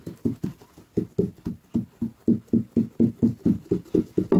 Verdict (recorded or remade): recorded